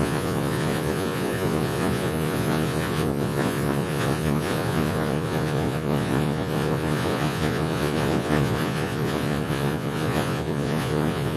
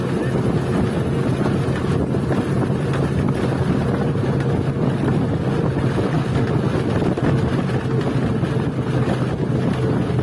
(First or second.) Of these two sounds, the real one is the second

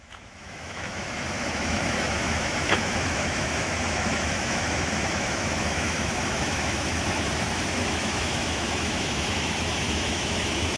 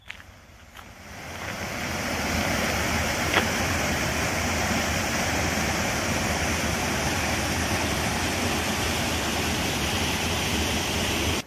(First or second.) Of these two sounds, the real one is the second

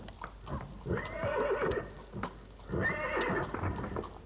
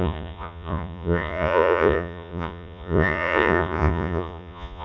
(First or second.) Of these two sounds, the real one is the first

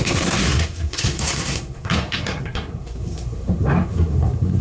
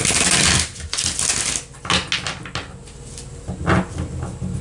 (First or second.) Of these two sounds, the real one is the second